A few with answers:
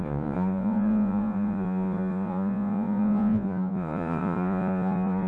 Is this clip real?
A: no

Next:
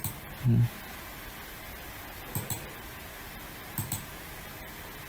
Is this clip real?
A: yes